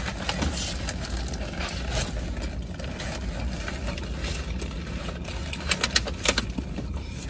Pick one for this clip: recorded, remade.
recorded